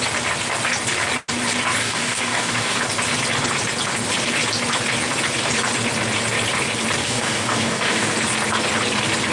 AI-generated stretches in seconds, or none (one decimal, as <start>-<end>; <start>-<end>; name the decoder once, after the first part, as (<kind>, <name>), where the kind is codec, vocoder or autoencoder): 1.8-2.8 (codec, DAC); 7.0-8.1